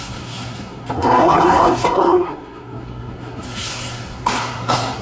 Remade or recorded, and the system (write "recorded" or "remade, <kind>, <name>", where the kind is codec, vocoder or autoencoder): remade, codec, SNAC